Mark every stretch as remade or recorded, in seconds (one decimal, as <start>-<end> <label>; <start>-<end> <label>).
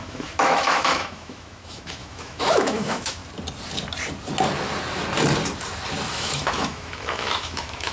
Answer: 0.0-3.2 remade; 3.2-6.1 recorded; 6.1-7.9 remade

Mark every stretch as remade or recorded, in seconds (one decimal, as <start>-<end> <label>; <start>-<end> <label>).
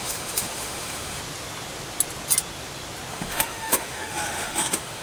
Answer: 0.0-1.2 remade; 1.2-3.1 recorded; 3.1-5.0 remade